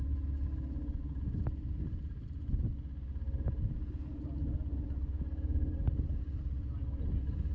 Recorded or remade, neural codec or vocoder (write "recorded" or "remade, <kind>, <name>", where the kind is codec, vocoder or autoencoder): recorded